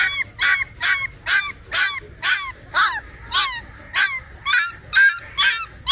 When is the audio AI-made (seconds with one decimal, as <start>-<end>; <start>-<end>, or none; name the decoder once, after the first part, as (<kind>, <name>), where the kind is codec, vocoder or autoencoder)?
none